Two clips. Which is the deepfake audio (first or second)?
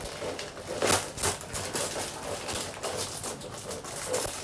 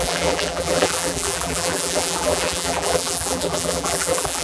second